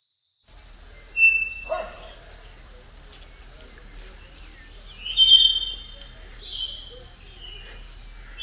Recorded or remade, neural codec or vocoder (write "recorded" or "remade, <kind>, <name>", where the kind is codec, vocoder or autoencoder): recorded